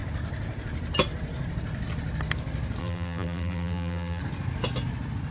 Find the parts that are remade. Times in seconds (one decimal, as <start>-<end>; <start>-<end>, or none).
2.8-4.2